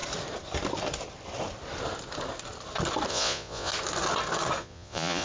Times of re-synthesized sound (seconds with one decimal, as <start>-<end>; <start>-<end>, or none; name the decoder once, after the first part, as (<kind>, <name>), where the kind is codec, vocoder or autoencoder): 3.1-3.7 (vocoder, Vocos); 4.6-5.2